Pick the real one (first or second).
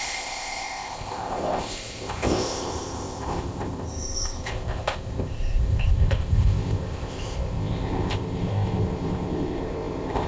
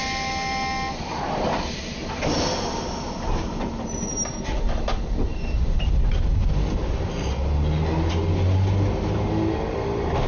second